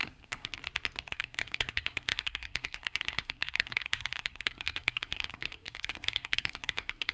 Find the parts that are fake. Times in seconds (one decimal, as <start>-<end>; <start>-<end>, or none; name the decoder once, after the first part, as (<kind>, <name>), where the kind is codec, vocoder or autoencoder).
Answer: 0.0-0.6 (codec, SNAC); 1.1-7.1